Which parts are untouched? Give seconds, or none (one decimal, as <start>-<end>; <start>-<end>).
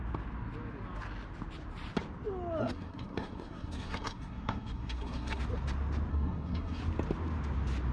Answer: 0.0-2.6; 5.4-6.1; 6.8-7.9